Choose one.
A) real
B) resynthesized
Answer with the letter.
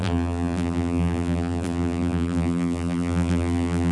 B